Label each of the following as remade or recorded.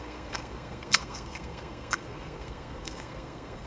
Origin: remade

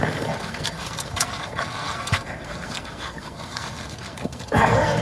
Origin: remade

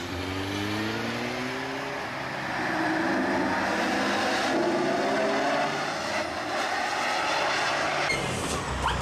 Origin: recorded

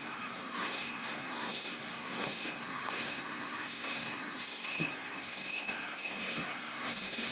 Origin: remade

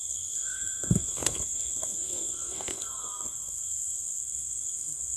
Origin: remade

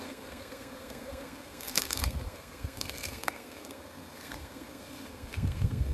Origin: remade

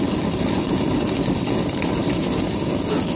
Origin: recorded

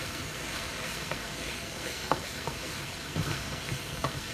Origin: remade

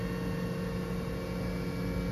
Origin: recorded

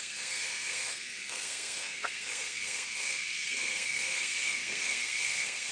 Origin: remade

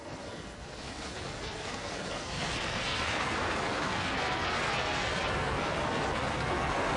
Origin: remade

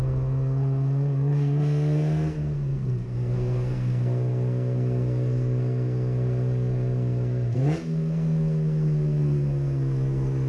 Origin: remade